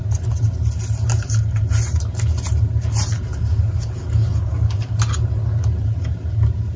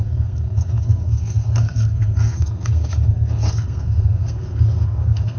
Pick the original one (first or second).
first